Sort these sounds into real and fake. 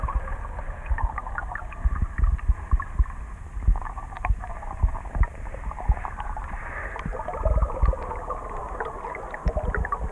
fake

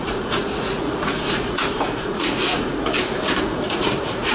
fake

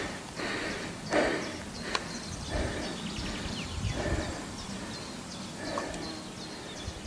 real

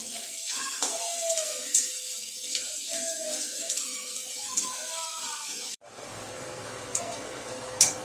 fake